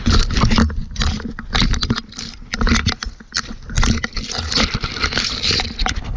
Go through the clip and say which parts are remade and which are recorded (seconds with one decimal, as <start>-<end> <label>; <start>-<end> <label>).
0.0-6.2 recorded